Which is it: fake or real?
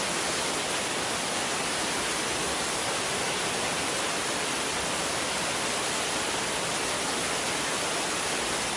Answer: real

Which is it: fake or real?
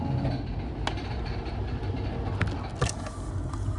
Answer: real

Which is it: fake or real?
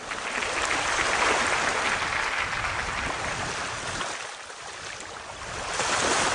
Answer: real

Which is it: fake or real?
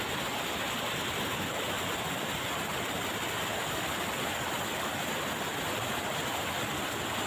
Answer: real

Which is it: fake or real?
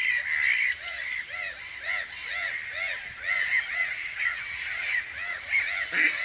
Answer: real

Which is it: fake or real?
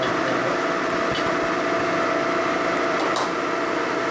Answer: real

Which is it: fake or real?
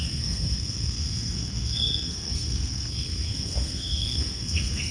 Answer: fake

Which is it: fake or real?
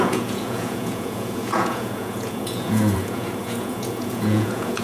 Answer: fake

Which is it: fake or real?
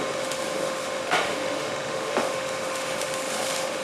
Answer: fake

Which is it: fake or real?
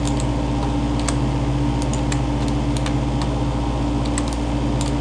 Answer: real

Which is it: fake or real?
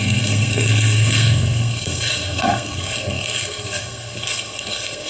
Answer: fake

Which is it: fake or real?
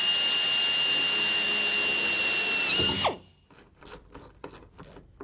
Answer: real